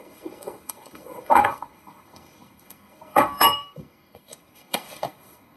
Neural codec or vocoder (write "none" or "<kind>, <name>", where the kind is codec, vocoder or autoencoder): codec, SNAC